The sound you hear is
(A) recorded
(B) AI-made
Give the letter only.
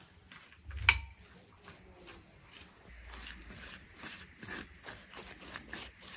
A